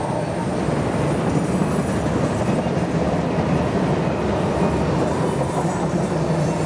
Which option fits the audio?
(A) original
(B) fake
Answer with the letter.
A